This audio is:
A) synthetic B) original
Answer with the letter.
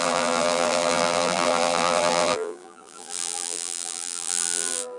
A